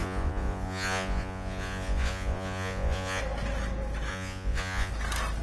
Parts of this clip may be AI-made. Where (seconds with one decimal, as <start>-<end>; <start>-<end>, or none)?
0.0-3.2; 4.1-4.9